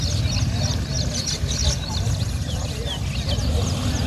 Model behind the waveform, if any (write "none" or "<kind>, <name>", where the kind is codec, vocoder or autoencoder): none